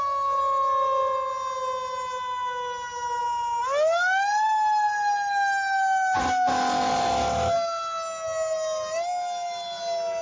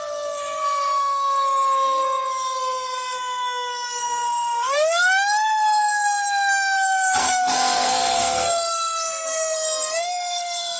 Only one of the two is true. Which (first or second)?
first